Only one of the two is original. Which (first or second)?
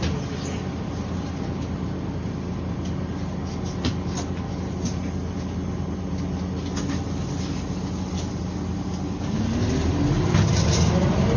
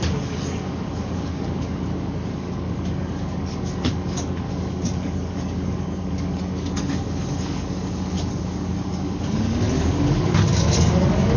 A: first